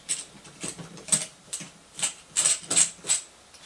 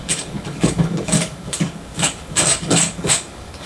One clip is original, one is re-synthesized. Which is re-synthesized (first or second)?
second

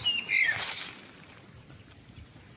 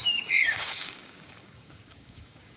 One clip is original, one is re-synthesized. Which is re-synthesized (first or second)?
second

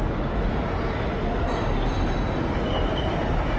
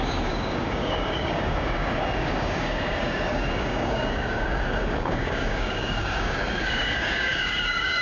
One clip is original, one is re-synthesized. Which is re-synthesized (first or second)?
second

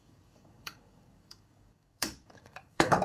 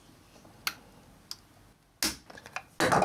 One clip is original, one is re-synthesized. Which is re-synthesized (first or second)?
first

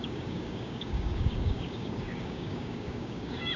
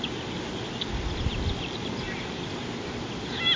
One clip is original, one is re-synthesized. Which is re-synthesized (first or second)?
first